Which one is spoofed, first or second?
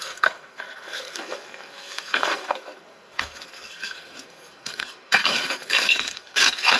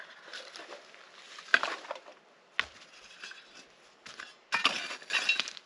first